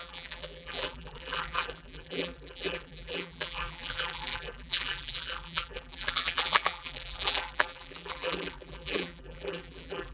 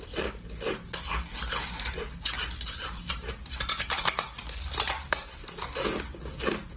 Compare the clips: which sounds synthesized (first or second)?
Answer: first